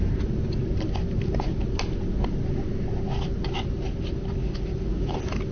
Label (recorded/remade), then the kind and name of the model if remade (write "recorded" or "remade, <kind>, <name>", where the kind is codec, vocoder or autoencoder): recorded